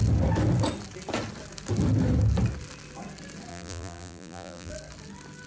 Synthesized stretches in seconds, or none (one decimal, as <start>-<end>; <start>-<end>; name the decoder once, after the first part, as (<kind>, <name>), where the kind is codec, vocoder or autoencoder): 3.5-4.7 (vocoder, BigVGAN v2)